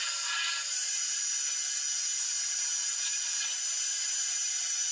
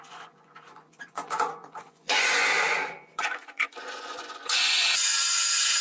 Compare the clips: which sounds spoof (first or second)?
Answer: second